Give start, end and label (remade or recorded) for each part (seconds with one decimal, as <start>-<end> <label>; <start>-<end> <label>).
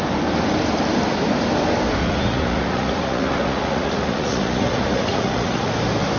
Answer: 0.0-2.0 recorded; 2.0-5.7 remade; 5.7-6.2 recorded